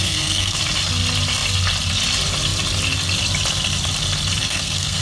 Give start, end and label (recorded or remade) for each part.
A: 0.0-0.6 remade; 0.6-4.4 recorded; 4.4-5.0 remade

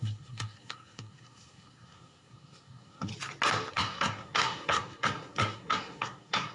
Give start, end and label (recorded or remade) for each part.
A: 0.0-3.1 remade; 3.1-3.7 recorded; 3.7-6.5 remade

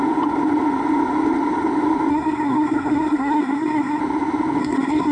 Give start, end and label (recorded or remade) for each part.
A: 0.0-2.1 recorded; 2.1-4.0 remade; 4.0-4.6 recorded; 4.6-5.1 remade